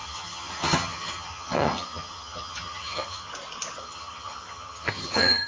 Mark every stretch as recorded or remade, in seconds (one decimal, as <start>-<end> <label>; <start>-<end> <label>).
0.0-3.3 remade; 3.3-3.8 recorded; 3.8-5.5 remade